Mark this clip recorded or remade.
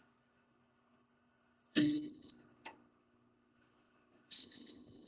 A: remade